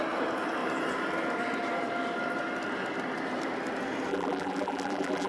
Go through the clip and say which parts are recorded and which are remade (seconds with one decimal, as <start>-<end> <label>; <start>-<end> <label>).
0.0-4.1 recorded; 4.1-5.3 remade